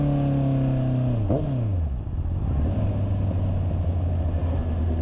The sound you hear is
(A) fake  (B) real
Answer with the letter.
B